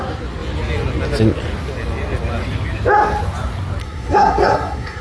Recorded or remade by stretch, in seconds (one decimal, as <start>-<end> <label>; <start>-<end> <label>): 0.0-3.8 recorded; 3.8-5.0 remade